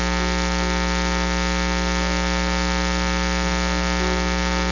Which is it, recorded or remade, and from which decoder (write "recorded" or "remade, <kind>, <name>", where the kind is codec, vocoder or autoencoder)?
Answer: recorded